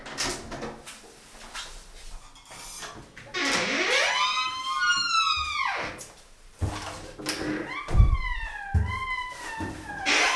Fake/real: real